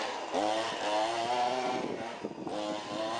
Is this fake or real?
real